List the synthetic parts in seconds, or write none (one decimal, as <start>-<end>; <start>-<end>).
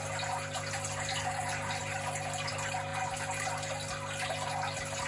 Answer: none